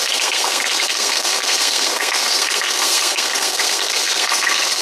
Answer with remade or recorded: remade